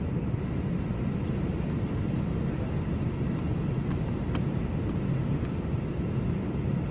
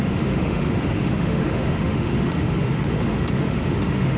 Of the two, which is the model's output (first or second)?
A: second